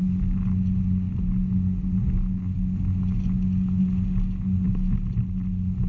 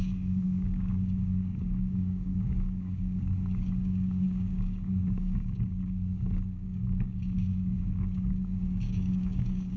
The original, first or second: first